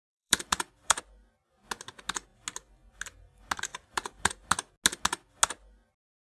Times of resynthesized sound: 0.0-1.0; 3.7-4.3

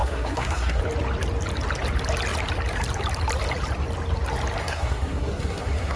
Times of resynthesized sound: 0.0-0.8; 4.6-6.0

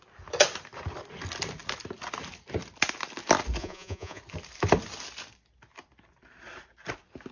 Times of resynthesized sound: 3.6-4.2

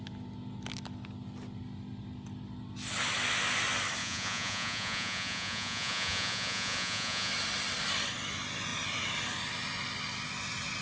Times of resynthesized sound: 4.0-7.3

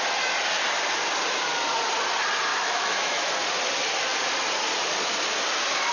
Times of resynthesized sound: 2.5-3.3